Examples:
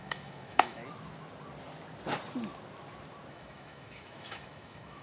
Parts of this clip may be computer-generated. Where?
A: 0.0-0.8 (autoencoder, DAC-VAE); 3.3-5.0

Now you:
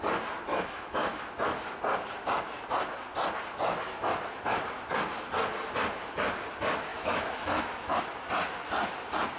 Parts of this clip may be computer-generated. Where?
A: 0.5-1.2 (autoencoder, DAC-VAE); 6.9-8.0

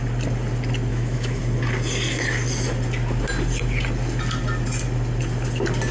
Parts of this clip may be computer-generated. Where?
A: 0.9-1.4 (autoencoder, DAC-VAE)

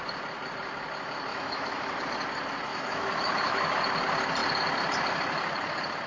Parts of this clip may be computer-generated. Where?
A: 1.3-2.0 (autoencoder, DAC-VAE); 2.7-3.8